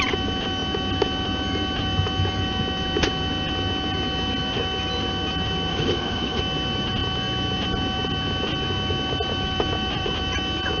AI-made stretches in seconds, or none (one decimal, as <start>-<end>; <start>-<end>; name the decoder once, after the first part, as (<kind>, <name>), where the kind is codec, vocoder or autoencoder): 5.7-6.4 (codec, HILCodec)